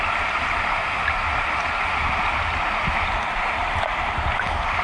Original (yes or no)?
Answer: yes